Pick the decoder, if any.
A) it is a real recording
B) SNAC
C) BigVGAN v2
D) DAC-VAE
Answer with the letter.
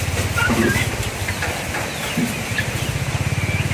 A